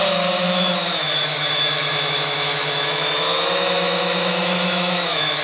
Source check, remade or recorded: remade